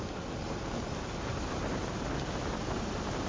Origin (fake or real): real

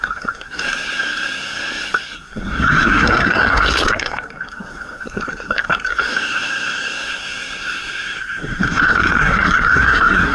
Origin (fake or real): fake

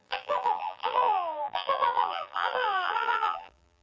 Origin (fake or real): fake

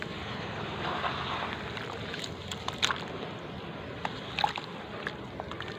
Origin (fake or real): real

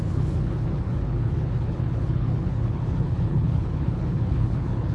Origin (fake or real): fake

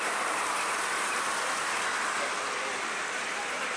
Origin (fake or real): real